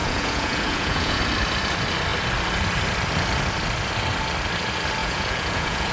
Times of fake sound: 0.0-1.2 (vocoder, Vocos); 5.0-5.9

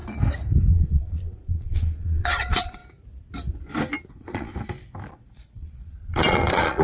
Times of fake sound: 0.7-2.8 (vocoder, Vocos); 4.1-4.5; 5.1-6.8

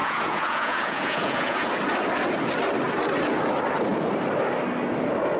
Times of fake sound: 0.0-1.7 (vocoder, Vocos)

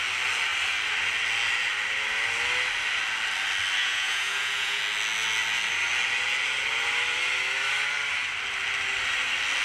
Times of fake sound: 3.8-4.8 (vocoder, Vocos)

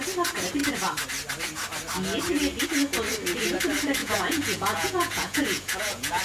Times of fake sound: 4.0-6.2 (vocoder, Vocos)